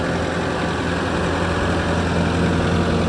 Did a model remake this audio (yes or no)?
no